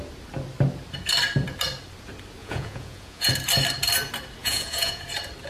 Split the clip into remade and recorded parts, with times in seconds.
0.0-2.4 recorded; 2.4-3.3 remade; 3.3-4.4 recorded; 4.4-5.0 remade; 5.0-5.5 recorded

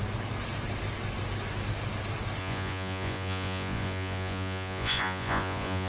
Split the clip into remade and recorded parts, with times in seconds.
0.0-2.4 recorded; 2.4-5.9 remade

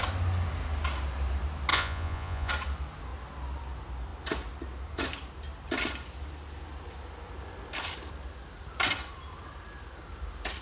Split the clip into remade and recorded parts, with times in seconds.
0.0-1.7 recorded; 1.7-2.5 remade; 2.5-10.6 recorded

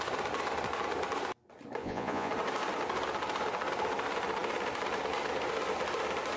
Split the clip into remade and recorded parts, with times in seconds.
0.0-1.8 recorded; 1.8-2.3 remade; 2.3-6.4 recorded

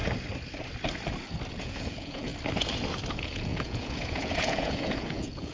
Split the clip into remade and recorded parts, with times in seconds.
0.0-1.6 recorded; 1.6-2.3 remade; 2.3-3.1 recorded; 3.1-5.5 remade

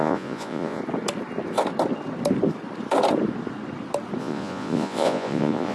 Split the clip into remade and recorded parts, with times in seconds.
0.0-0.8 remade; 0.8-4.2 recorded; 4.2-5.7 remade

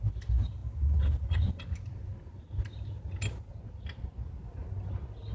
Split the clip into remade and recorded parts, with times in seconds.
0.0-5.3 recorded